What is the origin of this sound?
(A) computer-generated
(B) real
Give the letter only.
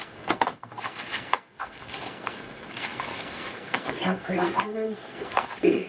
A